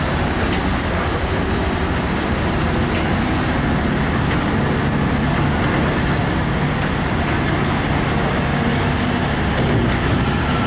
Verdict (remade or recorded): recorded